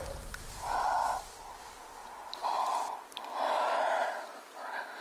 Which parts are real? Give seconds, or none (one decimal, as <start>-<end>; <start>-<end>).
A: 0.0-5.0